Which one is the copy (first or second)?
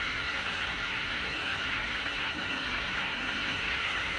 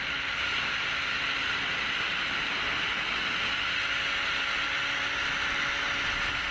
first